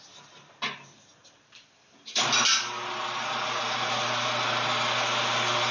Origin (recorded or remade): recorded